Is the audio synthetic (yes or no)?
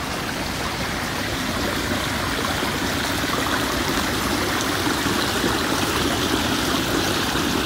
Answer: no